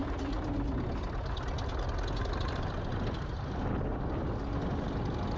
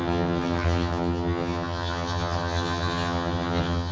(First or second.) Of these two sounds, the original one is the first